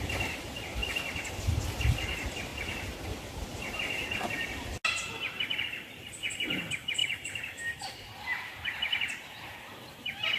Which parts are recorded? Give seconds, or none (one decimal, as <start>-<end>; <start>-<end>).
2.5-6.6